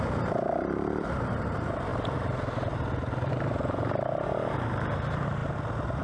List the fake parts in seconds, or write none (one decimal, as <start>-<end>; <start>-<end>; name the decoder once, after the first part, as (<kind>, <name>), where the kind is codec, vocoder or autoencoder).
0.0-1.9 (vocoder, BigVGAN v2); 3.3-5.4